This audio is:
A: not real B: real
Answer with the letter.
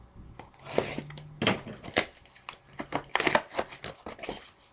B